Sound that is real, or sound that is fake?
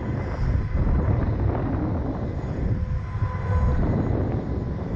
real